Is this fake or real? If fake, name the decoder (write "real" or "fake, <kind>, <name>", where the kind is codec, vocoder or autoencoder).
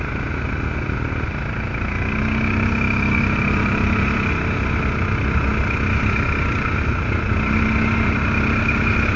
real